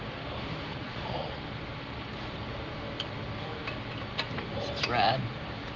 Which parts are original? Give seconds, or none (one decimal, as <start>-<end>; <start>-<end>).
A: 0.0-0.7; 1.4-5.8